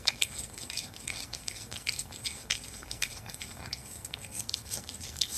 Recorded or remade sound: remade